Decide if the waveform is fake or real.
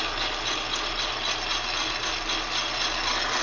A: real